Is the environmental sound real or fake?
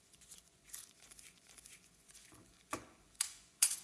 fake